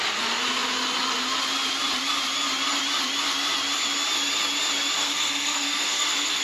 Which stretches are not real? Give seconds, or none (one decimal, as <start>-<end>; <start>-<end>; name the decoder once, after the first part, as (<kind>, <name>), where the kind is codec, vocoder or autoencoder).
5.0-6.4 (codec, SNAC)

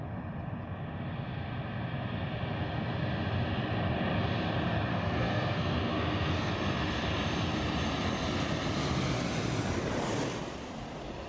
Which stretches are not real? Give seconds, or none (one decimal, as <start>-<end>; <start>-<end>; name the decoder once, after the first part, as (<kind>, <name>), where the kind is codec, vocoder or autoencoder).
4.9-6.5 (codec, SNAC)

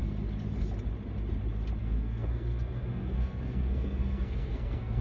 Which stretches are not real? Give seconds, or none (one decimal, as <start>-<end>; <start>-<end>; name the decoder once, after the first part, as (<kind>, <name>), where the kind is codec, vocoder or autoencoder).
1.8-5.0 (codec, SNAC)

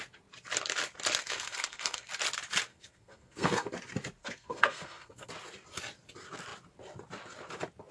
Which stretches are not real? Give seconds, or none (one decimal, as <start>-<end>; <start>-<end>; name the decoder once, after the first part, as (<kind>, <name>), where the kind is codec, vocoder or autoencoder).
1.2-2.1 (codec, SNAC); 2.7-3.7; 4.2-5.3

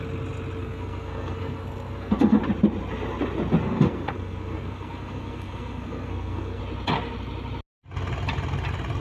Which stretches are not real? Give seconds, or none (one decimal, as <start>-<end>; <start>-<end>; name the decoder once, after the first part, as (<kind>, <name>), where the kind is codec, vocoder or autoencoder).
0.6-2.4 (codec, SNAC); 3.6-6.6

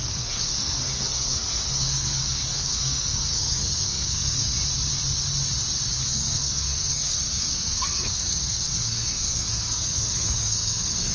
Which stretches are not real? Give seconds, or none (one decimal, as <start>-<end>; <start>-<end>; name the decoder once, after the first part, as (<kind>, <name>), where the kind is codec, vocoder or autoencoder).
0.0-4.5 (codec, SNAC); 6.0-11.1

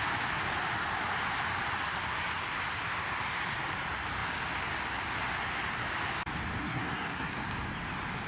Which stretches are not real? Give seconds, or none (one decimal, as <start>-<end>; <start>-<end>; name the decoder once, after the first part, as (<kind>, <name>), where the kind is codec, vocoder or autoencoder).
6.6-7.3 (codec, SNAC)